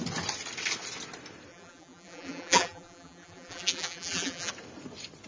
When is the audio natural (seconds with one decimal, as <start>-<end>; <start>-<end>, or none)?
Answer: 0.0-1.5; 4.5-5.3